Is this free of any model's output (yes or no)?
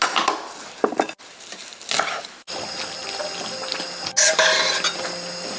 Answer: yes